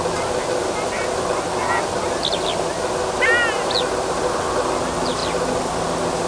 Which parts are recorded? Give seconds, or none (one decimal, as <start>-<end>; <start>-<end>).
0.0-6.3